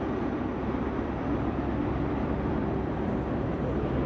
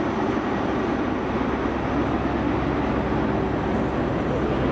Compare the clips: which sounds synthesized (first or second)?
first